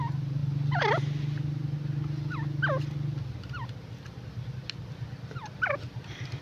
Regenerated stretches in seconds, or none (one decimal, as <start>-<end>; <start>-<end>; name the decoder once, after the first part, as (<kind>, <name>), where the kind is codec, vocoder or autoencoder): none